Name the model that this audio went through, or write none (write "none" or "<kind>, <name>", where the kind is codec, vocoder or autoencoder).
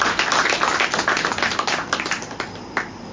none